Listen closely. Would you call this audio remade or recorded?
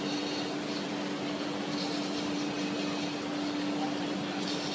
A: recorded